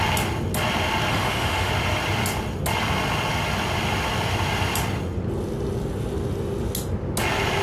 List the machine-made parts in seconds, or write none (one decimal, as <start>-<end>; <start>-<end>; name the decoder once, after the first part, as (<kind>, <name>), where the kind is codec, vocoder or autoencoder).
1.1-1.7 (autoencoder, DAC-VAE)